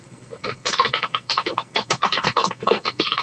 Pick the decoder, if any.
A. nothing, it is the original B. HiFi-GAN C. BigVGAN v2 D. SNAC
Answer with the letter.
D